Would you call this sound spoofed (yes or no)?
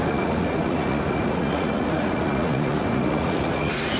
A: yes